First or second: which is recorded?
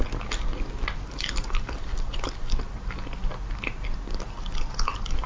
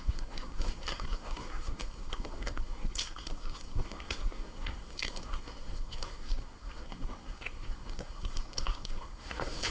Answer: first